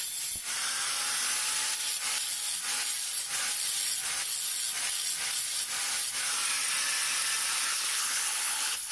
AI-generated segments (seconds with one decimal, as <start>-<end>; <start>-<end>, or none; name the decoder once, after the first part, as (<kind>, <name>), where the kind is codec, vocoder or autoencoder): 7.7-8.9 (codec, HILCodec)

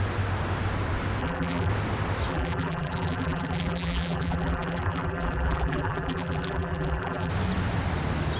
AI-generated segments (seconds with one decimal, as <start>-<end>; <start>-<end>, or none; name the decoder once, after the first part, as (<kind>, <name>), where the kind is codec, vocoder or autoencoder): 1.2-1.7 (vocoder, BigVGAN v2); 2.3-7.3

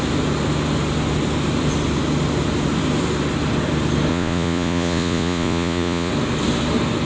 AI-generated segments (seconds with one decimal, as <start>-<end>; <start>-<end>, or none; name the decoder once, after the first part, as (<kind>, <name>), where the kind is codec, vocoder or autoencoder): 4.1-6.1 (vocoder, Vocos)

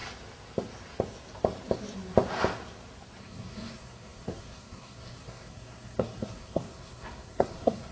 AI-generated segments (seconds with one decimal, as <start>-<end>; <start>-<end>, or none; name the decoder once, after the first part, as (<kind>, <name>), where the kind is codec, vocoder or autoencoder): 3.2-7.9 (codec, SNAC)

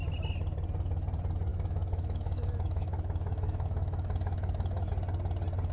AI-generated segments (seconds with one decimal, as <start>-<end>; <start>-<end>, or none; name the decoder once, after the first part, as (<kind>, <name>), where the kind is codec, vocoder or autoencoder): 1.5-4.9 (autoencoder, DAC-VAE)

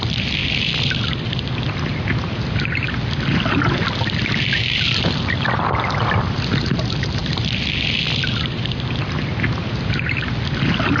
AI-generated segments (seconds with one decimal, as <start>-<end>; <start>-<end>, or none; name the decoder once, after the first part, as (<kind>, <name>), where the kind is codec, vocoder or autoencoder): 0.4-2.1 (vocoder, BigVGAN v2); 7.2-9.3

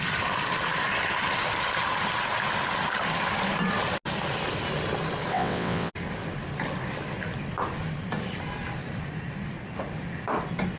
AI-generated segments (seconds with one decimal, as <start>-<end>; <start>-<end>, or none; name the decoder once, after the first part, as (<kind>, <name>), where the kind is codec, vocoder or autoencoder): 5.3-5.9 (vocoder, WaveNeXt)